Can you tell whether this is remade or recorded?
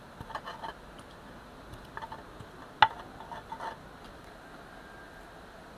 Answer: recorded